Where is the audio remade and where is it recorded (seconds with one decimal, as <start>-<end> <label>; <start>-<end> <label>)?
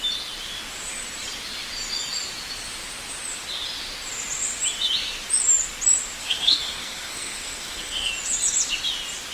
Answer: 0.0-6.2 recorded; 6.2-8.1 remade; 8.1-9.3 recorded